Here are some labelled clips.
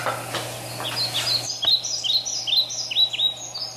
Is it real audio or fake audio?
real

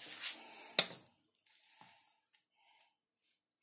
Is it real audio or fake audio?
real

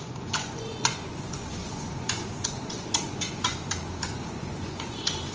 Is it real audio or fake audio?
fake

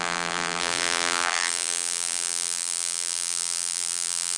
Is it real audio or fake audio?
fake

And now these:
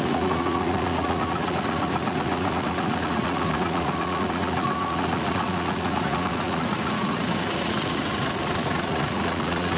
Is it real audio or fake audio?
fake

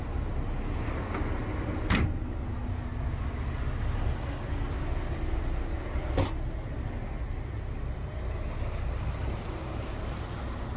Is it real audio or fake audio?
real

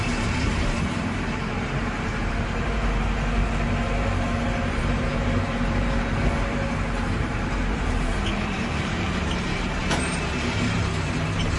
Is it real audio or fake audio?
fake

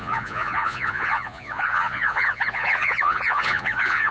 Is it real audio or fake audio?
fake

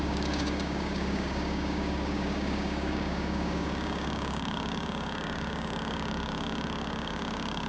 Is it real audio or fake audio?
fake